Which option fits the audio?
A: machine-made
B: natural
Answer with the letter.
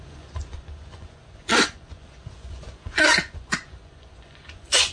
A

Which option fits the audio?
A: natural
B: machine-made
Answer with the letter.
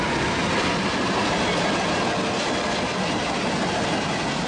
A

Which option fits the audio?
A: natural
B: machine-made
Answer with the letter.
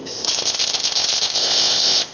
B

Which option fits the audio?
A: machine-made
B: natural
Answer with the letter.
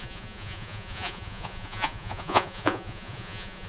A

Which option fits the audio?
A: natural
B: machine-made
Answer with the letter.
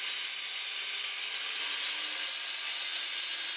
A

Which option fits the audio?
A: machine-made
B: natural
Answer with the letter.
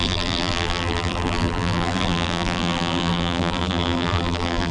A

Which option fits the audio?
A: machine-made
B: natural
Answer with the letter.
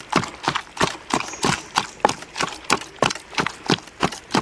B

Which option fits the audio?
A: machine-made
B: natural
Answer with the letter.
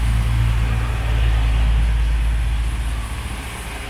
B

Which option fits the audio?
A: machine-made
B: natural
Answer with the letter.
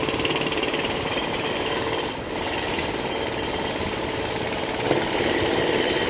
B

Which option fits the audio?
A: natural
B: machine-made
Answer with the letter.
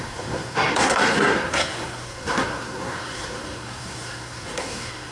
B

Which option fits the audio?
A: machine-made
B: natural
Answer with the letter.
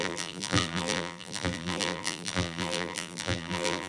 A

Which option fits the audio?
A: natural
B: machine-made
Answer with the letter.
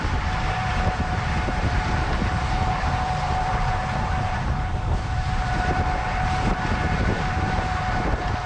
B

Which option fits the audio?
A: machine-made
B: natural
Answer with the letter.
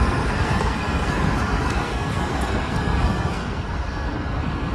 A